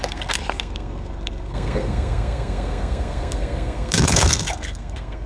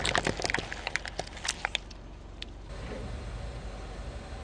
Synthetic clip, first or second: first